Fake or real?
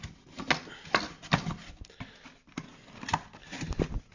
real